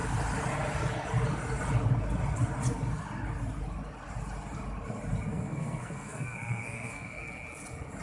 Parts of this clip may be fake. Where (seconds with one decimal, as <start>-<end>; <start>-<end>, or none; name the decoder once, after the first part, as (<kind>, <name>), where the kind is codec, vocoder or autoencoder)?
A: 5.3-7.3 (codec, SNAC)